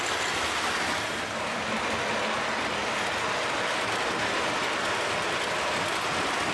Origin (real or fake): real